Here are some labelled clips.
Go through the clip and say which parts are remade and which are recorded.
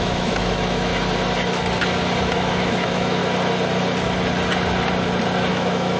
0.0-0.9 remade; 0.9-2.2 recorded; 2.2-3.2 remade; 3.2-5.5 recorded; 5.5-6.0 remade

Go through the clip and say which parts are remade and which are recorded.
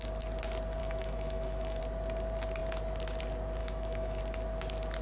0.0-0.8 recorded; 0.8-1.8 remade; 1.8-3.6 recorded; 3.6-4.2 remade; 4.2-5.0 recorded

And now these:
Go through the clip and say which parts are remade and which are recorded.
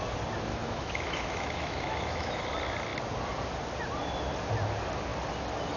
0.0-0.5 recorded; 0.5-2.4 remade; 2.4-5.8 recorded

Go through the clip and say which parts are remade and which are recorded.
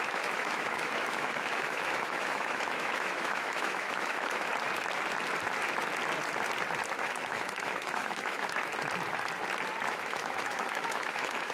0.0-4.5 remade; 4.5-7.0 recorded; 7.0-8.7 remade; 8.7-9.9 recorded; 9.9-11.5 remade